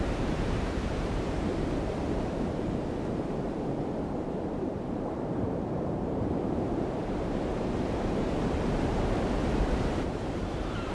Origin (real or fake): fake